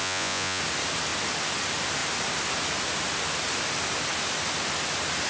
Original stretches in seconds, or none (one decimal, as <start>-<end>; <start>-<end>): 0.6-5.3